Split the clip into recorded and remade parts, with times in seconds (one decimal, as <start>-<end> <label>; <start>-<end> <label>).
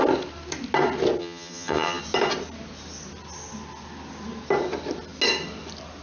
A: 0.0-1.2 recorded; 1.2-2.0 remade; 2.0-6.0 recorded